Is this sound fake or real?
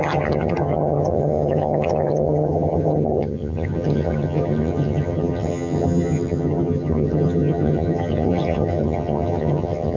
fake